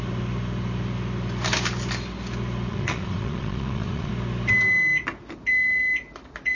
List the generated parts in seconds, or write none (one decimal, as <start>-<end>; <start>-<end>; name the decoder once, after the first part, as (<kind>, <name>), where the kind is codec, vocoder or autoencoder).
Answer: 2.7-4.1 (vocoder, Vocos)